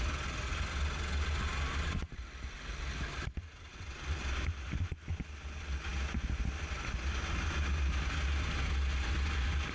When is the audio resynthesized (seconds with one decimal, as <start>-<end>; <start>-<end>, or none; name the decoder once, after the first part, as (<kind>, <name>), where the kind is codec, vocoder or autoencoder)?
none